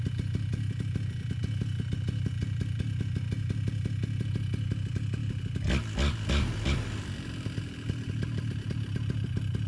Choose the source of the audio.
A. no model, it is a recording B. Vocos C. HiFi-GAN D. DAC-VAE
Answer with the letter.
A